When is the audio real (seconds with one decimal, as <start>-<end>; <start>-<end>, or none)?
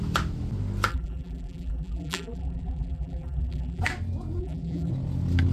0.0-0.9; 3.8-4.4; 4.9-5.5